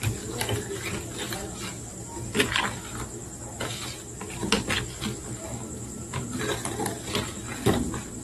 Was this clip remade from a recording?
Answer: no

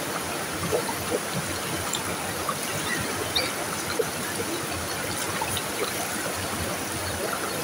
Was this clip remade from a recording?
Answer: no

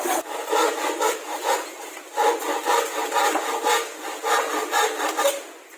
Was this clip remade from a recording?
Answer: no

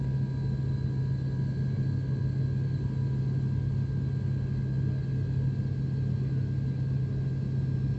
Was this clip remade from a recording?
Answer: no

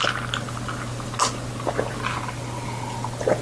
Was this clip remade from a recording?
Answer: no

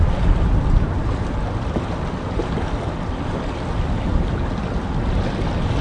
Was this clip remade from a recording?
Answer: no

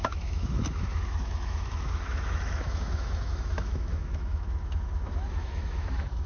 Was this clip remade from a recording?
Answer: yes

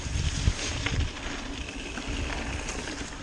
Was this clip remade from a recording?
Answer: no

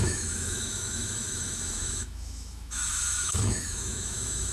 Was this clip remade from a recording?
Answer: yes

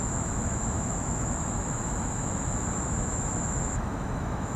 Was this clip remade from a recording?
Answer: yes